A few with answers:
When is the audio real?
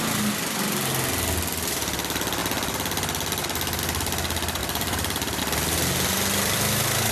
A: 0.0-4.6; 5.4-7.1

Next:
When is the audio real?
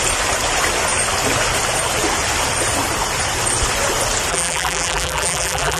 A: 0.0-4.3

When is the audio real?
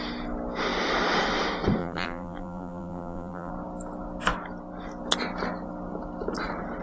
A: 0.0-1.8; 3.5-6.8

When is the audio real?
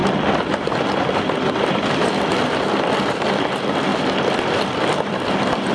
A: none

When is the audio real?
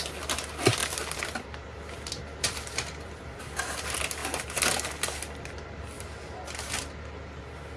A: 0.0-0.8; 3.4-7.8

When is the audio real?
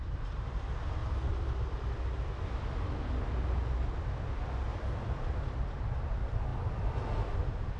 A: 0.0-4.7; 5.5-6.5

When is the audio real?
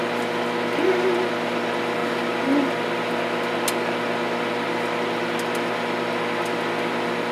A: 0.0-7.3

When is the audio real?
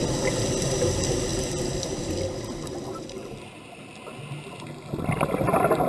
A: 0.0-5.9